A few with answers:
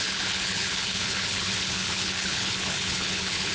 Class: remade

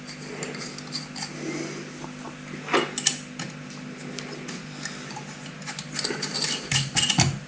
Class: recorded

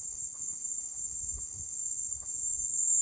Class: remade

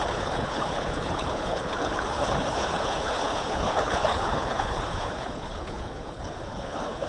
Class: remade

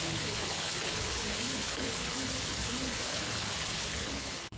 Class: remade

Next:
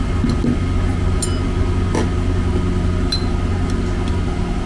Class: recorded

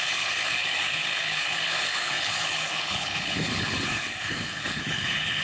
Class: remade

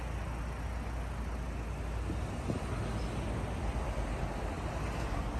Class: recorded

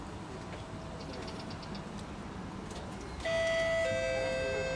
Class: recorded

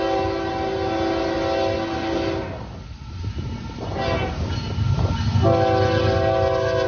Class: recorded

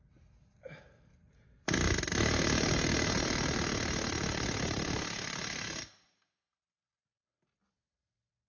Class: recorded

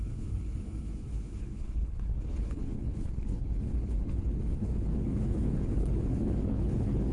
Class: remade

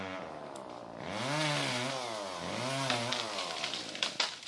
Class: recorded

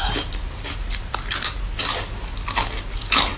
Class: recorded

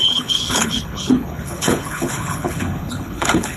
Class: remade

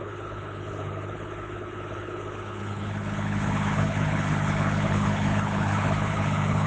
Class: remade